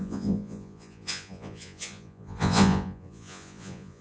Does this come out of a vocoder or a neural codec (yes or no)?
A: yes